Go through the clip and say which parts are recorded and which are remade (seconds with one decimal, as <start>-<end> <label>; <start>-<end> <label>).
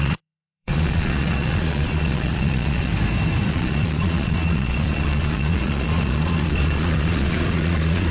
0.0-2.9 remade; 2.9-3.5 recorded; 3.5-8.1 remade